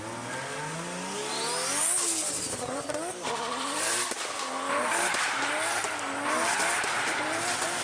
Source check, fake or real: real